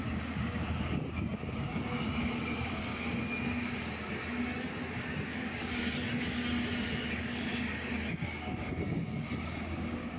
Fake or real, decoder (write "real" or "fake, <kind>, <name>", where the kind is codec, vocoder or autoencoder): fake, codec, DAC